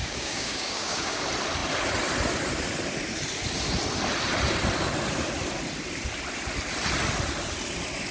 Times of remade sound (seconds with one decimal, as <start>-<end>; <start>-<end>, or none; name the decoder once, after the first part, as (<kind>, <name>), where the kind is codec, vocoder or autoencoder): 0.0-1.2 (codec, DAC)